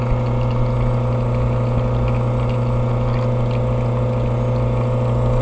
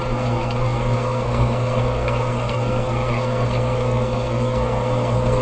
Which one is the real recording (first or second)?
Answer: first